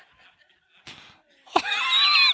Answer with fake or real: real